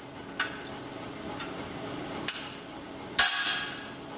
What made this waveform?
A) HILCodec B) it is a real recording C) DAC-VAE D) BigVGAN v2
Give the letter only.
B